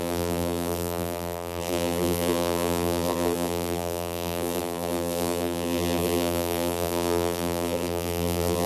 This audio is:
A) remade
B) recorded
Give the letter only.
A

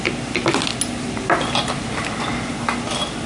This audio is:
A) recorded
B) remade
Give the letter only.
A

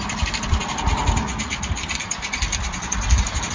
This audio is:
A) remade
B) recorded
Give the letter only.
B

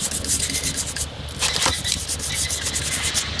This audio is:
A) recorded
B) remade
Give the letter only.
A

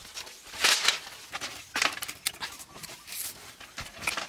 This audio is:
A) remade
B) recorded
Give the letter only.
B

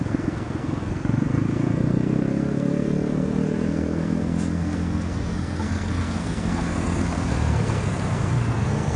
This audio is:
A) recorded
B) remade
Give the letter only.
B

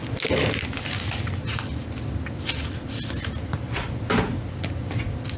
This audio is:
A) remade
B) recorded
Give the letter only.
B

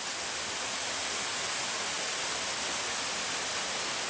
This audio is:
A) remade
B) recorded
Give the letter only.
B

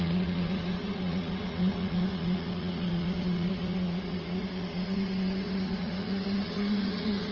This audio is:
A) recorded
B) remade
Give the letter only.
B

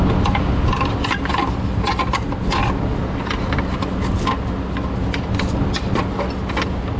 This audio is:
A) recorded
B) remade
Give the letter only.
A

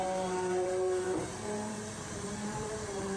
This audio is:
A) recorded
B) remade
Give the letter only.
B